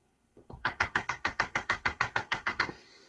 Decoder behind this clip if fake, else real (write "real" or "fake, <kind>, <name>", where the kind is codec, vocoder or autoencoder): fake, codec, SNAC